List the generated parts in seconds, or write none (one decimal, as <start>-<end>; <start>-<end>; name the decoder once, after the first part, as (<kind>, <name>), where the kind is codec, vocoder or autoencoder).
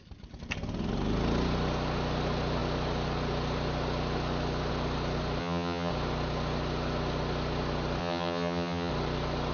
5.4-5.9 (vocoder, HiFi-GAN); 8.0-8.9